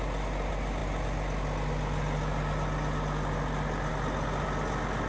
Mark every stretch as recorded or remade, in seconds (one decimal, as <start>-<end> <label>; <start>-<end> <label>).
0.0-5.1 recorded